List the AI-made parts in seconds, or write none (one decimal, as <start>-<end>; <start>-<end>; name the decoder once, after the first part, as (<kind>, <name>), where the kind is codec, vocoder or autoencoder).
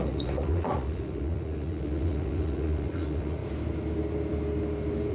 0.0-3.4 (vocoder, Vocos)